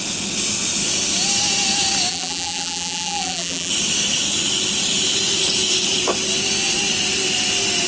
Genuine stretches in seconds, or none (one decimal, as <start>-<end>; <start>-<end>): 0.0-2.1; 3.7-7.9